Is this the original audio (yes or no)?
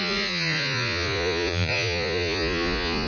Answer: no